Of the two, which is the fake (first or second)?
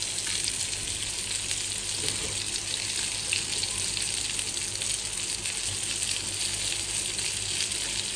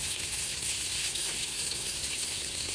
second